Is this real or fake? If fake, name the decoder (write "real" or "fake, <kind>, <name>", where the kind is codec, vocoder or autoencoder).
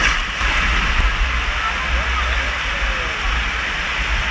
real